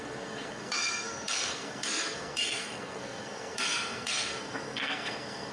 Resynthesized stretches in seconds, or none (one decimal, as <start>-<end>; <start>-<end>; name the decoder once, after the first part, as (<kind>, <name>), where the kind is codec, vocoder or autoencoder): 0.0-5.5 (codec, SNAC)